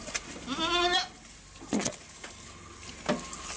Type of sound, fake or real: real